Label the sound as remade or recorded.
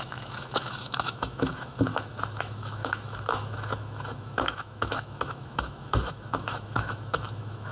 remade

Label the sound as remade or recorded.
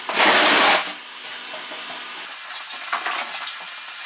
recorded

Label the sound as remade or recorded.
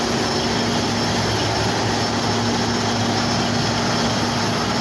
recorded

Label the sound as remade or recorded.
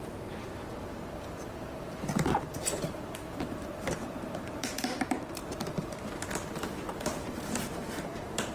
remade